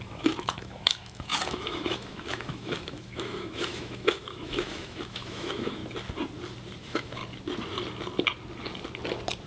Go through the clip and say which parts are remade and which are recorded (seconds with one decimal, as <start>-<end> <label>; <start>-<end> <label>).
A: 0.0-5.8 remade; 5.8-6.8 recorded; 6.8-7.2 remade; 7.2-9.5 recorded